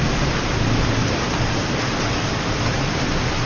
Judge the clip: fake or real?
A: real